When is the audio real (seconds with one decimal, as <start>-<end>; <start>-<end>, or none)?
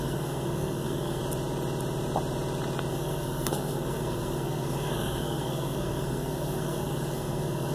1.2-2.9